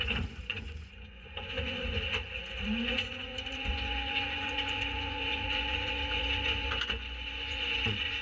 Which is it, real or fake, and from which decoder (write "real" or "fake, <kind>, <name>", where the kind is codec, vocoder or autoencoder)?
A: fake, vocoder, Vocos